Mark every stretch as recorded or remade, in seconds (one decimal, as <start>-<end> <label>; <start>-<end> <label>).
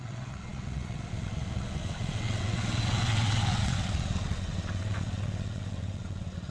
0.0-6.5 remade